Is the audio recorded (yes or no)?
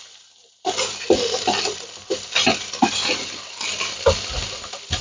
yes